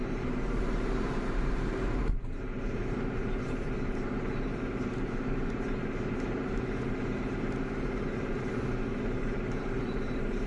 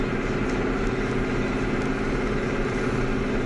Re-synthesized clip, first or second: first